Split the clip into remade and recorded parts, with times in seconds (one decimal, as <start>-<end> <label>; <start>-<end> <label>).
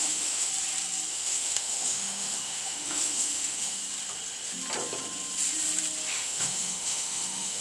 0.0-0.5 remade; 0.5-1.1 recorded; 1.1-3.8 remade; 3.8-6.1 recorded; 6.1-7.6 remade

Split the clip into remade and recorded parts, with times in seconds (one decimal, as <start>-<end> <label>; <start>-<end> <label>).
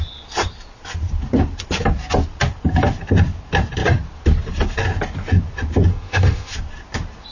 0.0-5.9 recorded; 5.9-6.5 remade; 6.5-7.3 recorded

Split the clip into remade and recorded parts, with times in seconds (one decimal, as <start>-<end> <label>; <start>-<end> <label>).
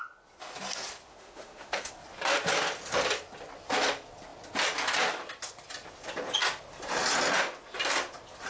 0.0-1.1 recorded; 1.1-1.9 remade; 1.9-8.5 recorded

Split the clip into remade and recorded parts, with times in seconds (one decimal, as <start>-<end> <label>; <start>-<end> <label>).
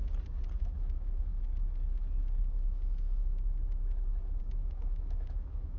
0.0-0.6 recorded; 0.6-1.3 remade; 1.3-4.4 recorded; 4.4-5.8 remade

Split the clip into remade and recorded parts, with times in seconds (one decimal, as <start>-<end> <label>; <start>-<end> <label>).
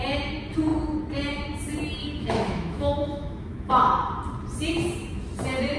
0.0-2.0 recorded; 2.0-3.7 remade; 3.7-5.8 recorded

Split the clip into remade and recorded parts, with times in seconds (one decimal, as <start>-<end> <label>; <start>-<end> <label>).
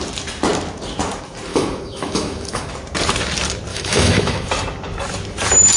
0.0-1.5 recorded; 1.5-2.7 remade; 2.7-3.7 recorded; 3.7-4.5 remade; 4.5-5.8 recorded